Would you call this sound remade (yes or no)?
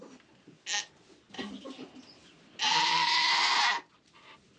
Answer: no